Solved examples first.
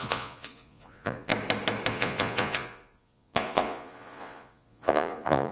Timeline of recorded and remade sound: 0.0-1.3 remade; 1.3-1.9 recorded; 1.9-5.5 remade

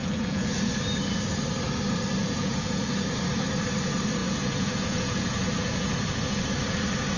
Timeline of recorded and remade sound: 0.0-0.7 remade; 0.7-2.2 recorded; 2.2-2.9 remade; 2.9-4.2 recorded; 4.2-6.4 remade; 6.4-7.2 recorded

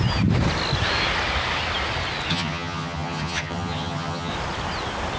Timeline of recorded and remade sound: 0.0-2.3 recorded; 2.3-4.3 remade; 4.3-5.2 recorded